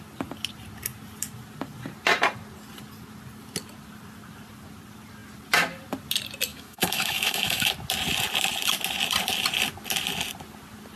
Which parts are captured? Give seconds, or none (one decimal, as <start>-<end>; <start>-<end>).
0.0-6.5; 7.7-11.0